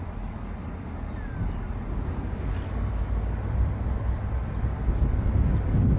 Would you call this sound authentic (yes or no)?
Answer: yes